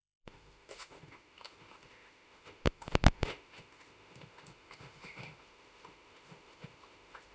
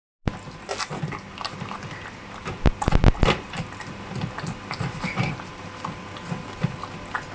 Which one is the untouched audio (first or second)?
second